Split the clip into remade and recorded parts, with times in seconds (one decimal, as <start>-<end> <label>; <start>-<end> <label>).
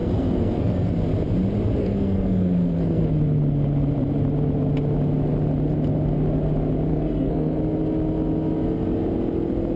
0.0-0.9 remade; 0.9-1.8 recorded; 1.8-3.1 remade; 3.1-6.9 recorded; 6.9-7.6 remade; 7.6-9.8 recorded